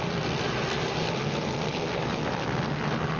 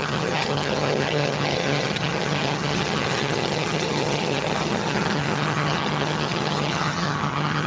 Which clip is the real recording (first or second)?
first